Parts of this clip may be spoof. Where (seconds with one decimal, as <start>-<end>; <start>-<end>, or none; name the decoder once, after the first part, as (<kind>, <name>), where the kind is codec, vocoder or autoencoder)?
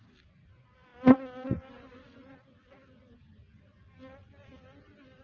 none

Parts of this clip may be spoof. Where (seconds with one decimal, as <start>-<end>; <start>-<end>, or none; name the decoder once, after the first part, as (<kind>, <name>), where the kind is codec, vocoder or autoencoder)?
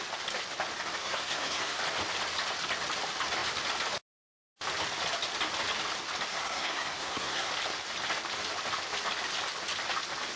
1.0-1.8 (codec, SNAC); 6.3-7.5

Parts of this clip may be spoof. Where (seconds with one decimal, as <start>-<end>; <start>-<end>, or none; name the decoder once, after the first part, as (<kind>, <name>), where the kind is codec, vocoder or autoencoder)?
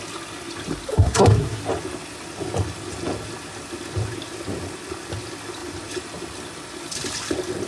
0.9-1.6 (codec, SNAC)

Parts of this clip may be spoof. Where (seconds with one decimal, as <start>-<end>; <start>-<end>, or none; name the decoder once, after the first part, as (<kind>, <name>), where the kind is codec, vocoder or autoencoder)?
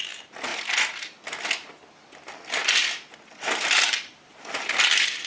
none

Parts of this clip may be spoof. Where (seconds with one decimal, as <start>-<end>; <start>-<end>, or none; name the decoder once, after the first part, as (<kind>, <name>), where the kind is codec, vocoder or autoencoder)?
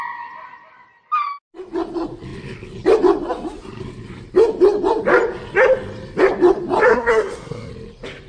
6.9-7.7 (codec, SNAC)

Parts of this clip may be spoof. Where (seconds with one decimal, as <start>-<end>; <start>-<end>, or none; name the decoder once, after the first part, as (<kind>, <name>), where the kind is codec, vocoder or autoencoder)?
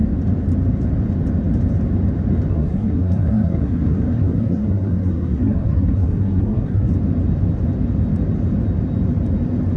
2.5-6.9 (codec, SNAC)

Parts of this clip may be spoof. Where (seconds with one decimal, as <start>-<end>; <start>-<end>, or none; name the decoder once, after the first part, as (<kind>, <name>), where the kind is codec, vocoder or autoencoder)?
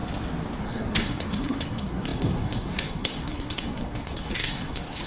0.6-5.1 (codec, SNAC)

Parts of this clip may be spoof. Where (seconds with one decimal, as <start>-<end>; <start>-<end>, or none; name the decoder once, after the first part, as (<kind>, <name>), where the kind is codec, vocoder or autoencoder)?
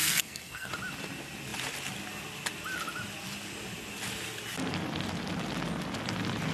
0.0-0.7 (codec, SNAC)